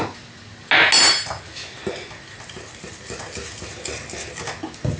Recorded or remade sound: recorded